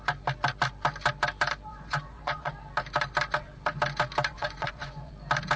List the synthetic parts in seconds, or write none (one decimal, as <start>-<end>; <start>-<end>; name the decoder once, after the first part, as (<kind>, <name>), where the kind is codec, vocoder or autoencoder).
1.7-2.5 (vocoder, Vocos); 4.3-5.1